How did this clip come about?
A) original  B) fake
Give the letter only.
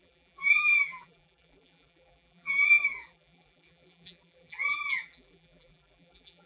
B